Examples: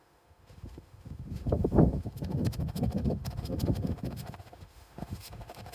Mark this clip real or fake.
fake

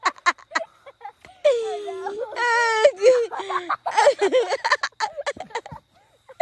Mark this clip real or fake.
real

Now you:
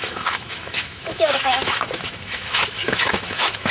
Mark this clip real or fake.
fake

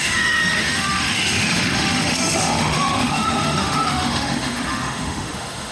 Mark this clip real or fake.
fake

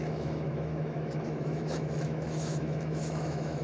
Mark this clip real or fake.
fake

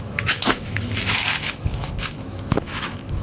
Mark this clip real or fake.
fake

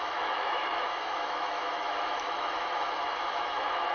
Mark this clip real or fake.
fake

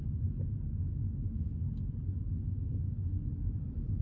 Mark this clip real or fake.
real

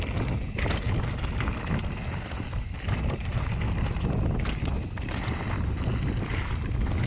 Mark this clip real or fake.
real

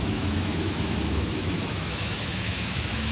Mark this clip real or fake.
fake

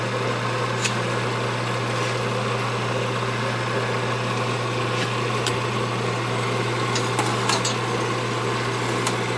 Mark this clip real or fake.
real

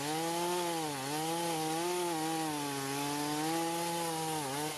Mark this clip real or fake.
real